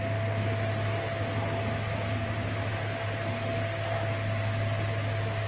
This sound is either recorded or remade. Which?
recorded